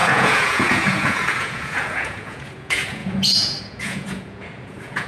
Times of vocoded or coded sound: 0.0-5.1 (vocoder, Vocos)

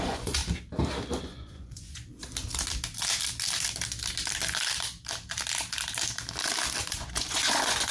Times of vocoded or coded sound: 0.0-0.4 (vocoder, Vocos); 1.2-2.2; 6.9-7.9

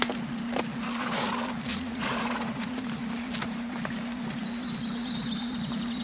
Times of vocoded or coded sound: 1.7-2.8 (vocoder, Vocos)

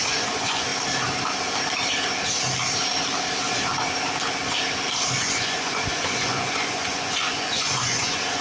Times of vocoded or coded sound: 0.0-0.7 (vocoder, Vocos); 5.2-8.4

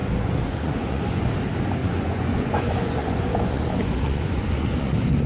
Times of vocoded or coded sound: 0.0-1.3 (vocoder, Vocos); 1.8-5.3

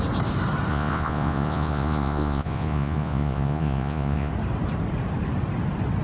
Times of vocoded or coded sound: 0.7-4.3 (vocoder, Vocos)